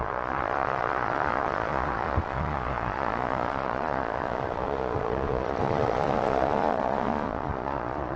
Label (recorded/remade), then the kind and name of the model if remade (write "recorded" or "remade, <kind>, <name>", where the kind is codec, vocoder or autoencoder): remade, vocoder, Vocos